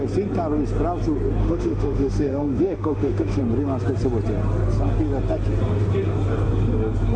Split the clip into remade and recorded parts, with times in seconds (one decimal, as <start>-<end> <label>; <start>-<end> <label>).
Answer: 0.0-1.4 recorded; 1.4-3.4 remade; 3.4-7.2 recorded